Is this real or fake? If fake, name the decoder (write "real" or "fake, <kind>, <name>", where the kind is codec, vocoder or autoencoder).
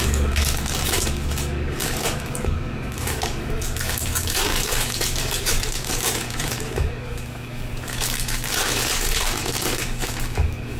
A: fake, codec, DAC